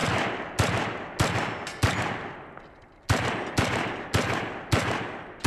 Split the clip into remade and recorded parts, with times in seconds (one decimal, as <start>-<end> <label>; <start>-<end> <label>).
0.0-5.5 recorded